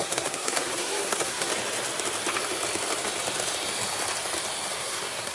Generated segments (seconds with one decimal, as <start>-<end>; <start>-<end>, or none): 0.0-1.5; 4.7-5.3